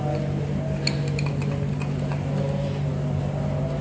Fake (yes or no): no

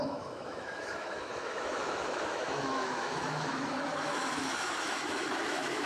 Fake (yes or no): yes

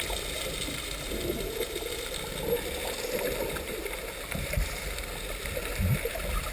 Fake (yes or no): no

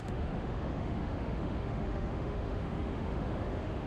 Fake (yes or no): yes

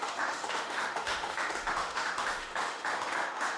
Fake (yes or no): yes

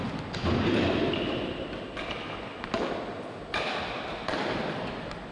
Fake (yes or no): no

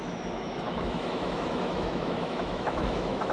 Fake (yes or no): yes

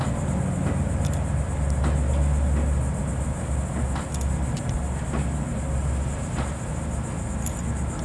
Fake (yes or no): no